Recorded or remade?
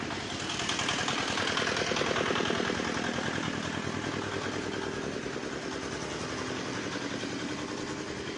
recorded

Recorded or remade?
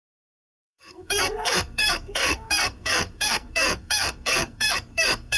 remade